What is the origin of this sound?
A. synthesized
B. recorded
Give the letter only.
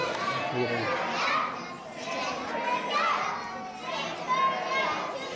B